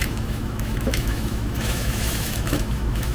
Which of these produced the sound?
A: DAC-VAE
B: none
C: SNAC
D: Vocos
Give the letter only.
A